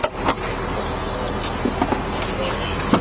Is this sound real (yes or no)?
yes